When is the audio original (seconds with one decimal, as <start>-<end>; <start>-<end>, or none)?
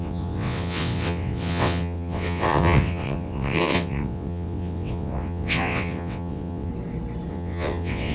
6.7-7.3